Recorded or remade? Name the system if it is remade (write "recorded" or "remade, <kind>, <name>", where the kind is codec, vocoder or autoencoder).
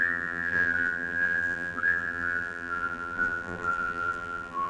remade, vocoder, BigVGAN v2